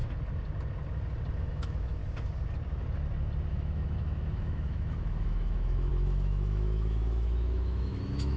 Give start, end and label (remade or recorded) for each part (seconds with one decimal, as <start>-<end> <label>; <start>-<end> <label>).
0.0-1.4 recorded; 1.4-2.0 remade; 2.0-3.5 recorded; 3.5-8.4 remade